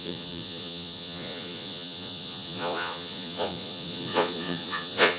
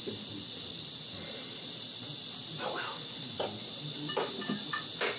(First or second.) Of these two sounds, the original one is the second